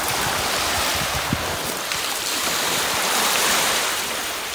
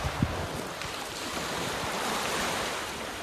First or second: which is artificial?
first